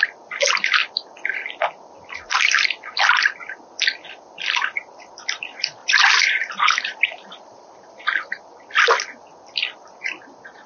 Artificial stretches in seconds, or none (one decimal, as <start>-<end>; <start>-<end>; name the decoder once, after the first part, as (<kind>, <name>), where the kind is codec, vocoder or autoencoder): 5.8-8.0 (vocoder, BigVGAN v2)